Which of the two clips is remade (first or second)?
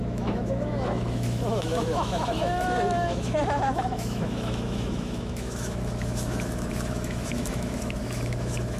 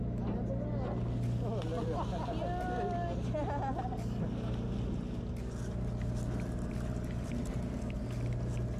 first